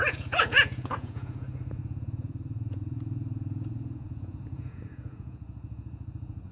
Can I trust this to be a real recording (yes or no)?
no